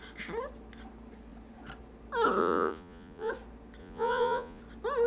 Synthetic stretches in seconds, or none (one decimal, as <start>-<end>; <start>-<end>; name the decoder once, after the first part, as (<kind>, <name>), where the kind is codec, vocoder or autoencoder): 2.4-3.3 (vocoder, Vocos); 3.8-4.6